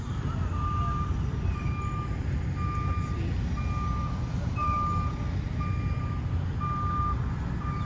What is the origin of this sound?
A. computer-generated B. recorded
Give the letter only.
B